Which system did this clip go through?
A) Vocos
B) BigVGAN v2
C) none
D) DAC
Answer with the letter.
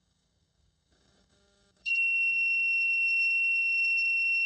D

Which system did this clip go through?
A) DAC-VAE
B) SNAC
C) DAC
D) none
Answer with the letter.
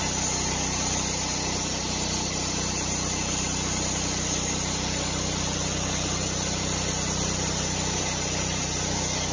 D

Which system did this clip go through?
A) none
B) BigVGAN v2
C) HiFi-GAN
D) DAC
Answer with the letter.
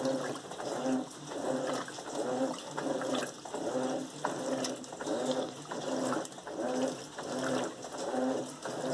A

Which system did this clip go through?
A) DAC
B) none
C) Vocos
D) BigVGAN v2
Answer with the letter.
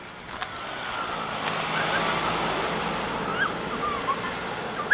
B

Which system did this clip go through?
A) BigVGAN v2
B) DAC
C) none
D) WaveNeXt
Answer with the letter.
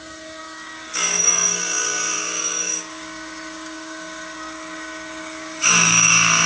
B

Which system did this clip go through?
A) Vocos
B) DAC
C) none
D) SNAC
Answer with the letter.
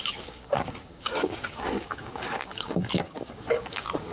B